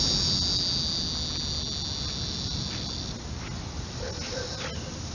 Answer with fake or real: real